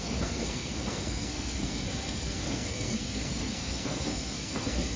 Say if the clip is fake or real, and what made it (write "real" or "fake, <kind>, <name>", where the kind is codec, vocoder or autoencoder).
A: fake, codec, SNAC